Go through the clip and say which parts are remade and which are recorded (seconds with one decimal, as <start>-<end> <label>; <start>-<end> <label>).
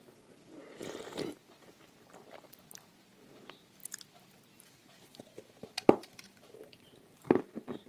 0.0-5.1 recorded; 5.1-7.4 remade; 7.4-7.9 recorded